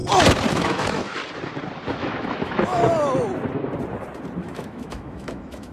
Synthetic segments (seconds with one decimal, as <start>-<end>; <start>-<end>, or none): 0.5-1.2; 1.9-2.8; 4.4-5.7